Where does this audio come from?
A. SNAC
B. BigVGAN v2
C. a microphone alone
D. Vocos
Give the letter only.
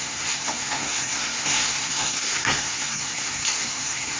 A